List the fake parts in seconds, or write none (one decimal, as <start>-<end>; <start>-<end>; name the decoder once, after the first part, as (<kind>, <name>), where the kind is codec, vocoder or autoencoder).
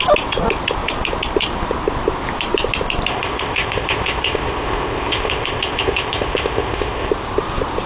3.1-7.1 (codec, ZipCodec)